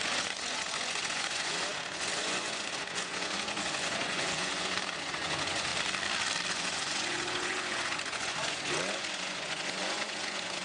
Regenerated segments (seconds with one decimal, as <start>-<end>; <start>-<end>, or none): 0.0-5.7; 6.5-10.6